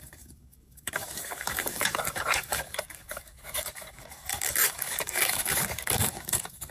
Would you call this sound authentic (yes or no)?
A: no